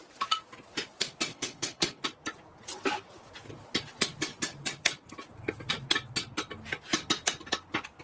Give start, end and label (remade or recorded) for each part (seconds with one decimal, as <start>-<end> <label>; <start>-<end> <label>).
0.0-1.3 recorded; 1.3-2.0 remade; 2.0-8.0 recorded